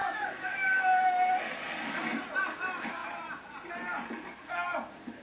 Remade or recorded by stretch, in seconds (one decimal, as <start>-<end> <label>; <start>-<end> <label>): 0.0-1.3 remade; 1.3-5.2 recorded